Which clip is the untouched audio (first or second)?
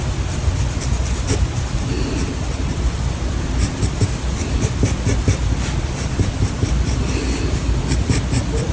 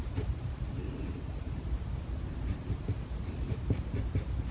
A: first